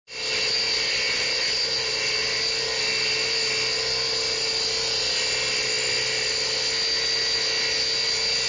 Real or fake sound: real